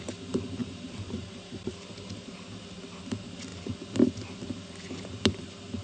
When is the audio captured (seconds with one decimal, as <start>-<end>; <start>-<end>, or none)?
0.0-0.6; 2.3-5.8